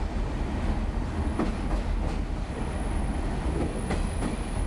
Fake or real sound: real